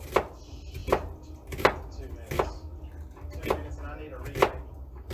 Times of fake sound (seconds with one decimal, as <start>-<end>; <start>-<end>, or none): none